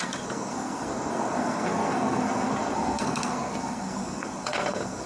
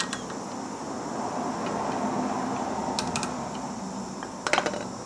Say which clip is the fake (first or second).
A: first